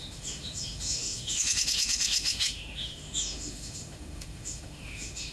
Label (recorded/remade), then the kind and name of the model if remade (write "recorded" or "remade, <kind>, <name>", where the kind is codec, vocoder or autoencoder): remade, autoencoder, DAC-VAE